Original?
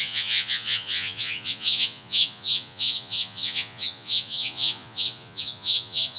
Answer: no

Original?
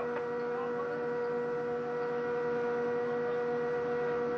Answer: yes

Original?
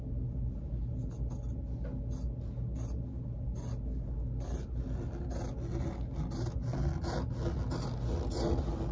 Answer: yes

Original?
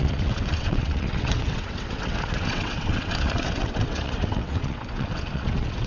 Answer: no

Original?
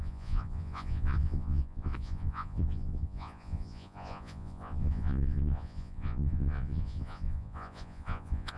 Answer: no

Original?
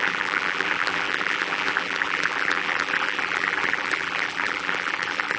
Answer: no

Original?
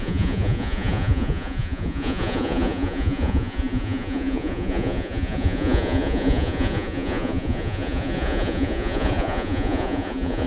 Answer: no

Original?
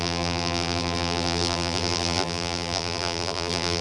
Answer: no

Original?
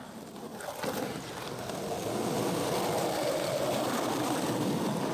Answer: yes